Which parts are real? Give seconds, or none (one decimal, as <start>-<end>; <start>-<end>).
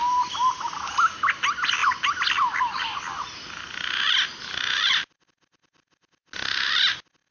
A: 0.0-7.3